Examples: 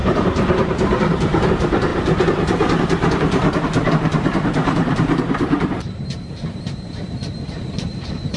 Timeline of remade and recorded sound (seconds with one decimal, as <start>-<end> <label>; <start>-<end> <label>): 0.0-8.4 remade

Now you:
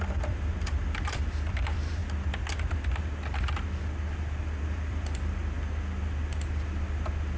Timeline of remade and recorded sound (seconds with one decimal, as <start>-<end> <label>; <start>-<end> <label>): 0.0-2.0 remade; 2.0-4.6 recorded; 4.6-5.4 remade; 5.4-7.4 recorded

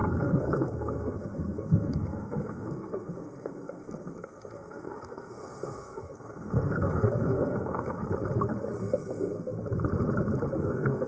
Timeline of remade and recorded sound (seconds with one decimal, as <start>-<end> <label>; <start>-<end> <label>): 0.0-8.0 remade; 8.0-8.8 recorded; 8.8-9.3 remade; 9.3-10.6 recorded; 10.6-11.1 remade